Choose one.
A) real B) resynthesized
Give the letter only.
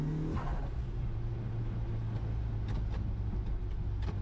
A